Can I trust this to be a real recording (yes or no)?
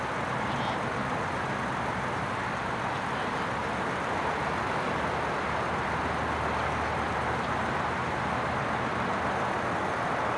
yes